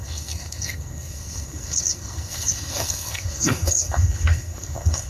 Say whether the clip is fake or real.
fake